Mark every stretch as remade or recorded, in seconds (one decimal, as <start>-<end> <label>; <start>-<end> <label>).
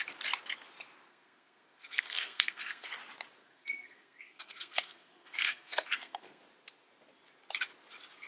0.0-1.1 recorded; 1.1-2.9 remade; 2.9-3.4 recorded; 3.4-6.4 remade; 6.4-8.3 recorded